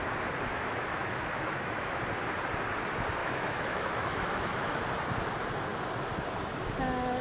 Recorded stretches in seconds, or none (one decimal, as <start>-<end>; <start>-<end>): 0.0-0.5; 2.0-3.2; 4.8-7.2